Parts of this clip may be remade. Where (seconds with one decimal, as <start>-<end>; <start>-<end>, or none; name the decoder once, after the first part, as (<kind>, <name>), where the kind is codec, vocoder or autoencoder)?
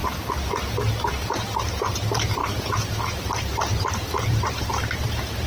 1.7-5.5 (vocoder, BigVGAN v2)